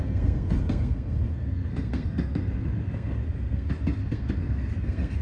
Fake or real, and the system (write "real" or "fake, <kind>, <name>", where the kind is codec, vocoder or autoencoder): fake, codec, SNAC